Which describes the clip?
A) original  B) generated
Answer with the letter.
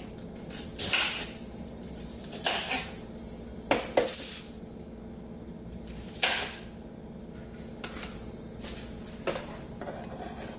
A